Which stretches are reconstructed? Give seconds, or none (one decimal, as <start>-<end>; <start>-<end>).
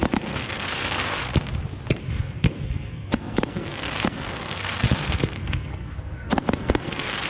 0.0-1.3; 2.0-7.3